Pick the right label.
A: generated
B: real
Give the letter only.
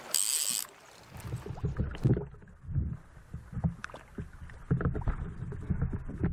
B